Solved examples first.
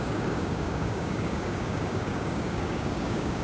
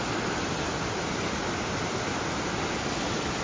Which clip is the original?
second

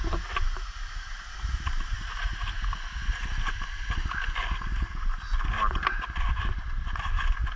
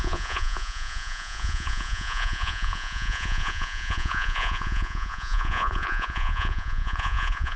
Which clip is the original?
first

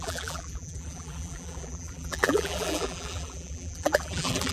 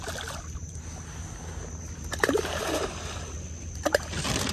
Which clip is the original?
second